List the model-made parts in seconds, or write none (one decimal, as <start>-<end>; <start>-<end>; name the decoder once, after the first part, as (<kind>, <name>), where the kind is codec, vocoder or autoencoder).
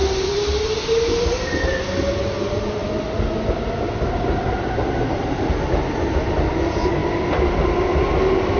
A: none